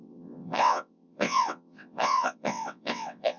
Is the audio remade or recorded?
remade